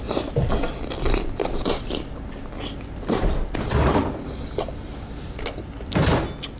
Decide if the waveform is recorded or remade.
remade